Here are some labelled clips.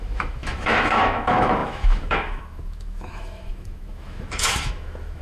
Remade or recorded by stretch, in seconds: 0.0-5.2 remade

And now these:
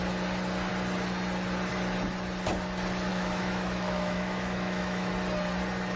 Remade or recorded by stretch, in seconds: 0.0-3.1 recorded; 3.1-5.1 remade; 5.1-6.0 recorded

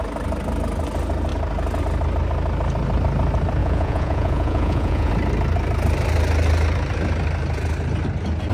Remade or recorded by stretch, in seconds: 0.0-3.6 recorded; 3.6-5.1 remade; 5.1-8.5 recorded